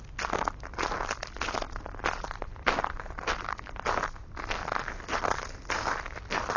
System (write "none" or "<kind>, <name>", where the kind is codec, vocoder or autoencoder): none